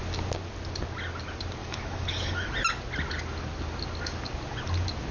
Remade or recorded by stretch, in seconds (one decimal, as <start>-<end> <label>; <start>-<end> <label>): 0.0-1.6 recorded; 1.6-2.5 remade; 2.5-5.1 recorded